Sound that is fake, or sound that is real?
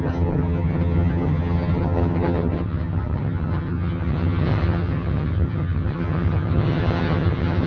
fake